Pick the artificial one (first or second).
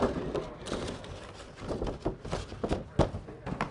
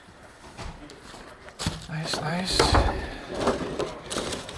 second